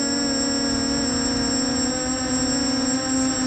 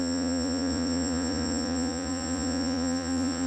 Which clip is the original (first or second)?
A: first